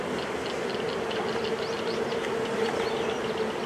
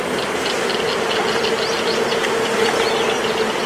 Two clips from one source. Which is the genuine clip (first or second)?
first